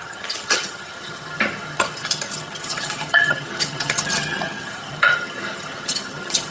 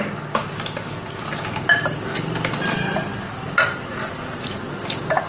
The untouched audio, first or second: second